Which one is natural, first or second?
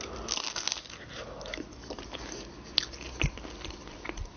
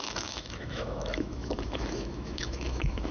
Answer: first